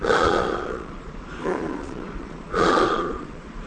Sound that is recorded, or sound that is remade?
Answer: remade